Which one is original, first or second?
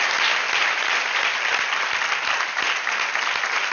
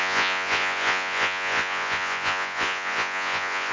first